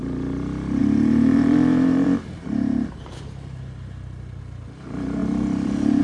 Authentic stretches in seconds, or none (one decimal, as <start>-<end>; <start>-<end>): 0.0-0.8; 4.4-5.2